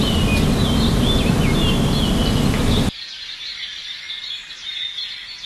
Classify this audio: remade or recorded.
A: recorded